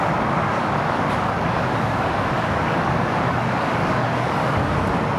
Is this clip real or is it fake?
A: fake